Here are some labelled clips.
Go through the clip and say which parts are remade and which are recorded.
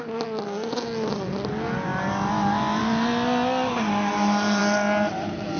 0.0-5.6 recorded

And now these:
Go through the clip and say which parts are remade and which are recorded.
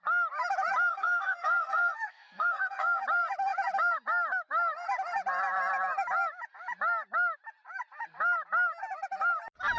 0.0-0.9 recorded; 0.9-3.0 remade; 3.0-9.8 recorded